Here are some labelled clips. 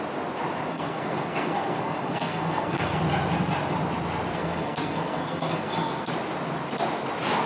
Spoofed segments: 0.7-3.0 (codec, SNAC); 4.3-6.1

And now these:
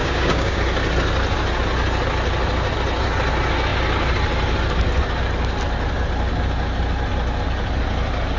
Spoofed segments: 0.0-0.6 (codec, DAC)

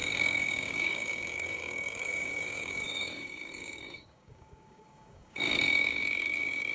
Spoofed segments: 0.0-6.7 (codec, DAC)

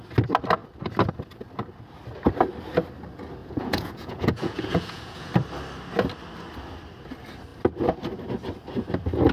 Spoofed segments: 3.4-5.3 (vocoder, Vocos)

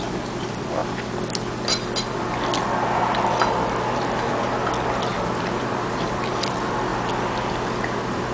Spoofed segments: 0.0-0.8 (vocoder, BigVGAN v2); 5.1-8.3

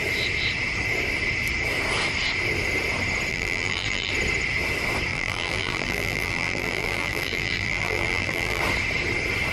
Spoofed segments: 3.3-4.1 (vocoder, BigVGAN v2); 5.1-8.6

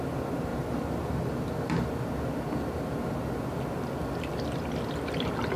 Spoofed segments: 0.5-1.9 (vocoder, BigVGAN v2)

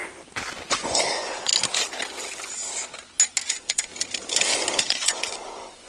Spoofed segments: 0.7-1.5 (vocoder, Vocos); 3.5-3.9; 4.8-5.9